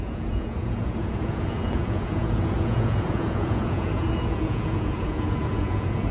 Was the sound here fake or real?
fake